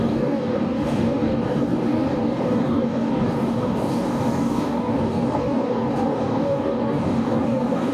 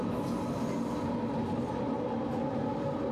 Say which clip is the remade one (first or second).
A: first